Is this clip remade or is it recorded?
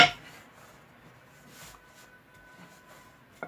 recorded